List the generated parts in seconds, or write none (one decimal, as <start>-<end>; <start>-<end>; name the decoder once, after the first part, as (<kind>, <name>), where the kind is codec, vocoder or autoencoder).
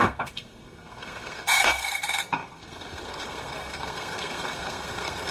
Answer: 0.0-5.3 (codec, SNAC)